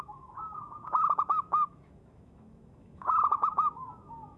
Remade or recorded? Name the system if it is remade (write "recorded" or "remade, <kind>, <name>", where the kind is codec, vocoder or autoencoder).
remade, autoencoder, DAC-VAE